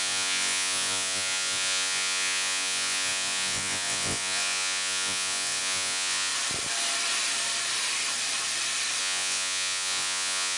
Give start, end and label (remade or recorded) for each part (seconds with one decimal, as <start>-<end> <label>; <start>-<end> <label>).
0.0-6.3 remade; 6.3-9.0 recorded; 9.0-10.6 remade